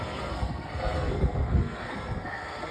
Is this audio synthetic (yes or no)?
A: yes